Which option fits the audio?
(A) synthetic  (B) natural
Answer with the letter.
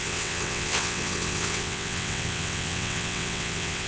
A